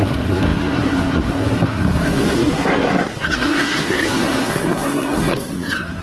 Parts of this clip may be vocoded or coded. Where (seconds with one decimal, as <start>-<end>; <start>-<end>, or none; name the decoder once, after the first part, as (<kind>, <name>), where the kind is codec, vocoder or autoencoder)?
0.0-6.0 (codec, SNAC)